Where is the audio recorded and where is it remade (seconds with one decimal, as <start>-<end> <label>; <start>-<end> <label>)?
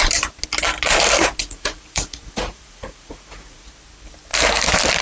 0.0-1.4 recorded; 1.4-3.7 remade; 3.7-5.0 recorded